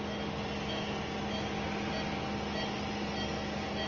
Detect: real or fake real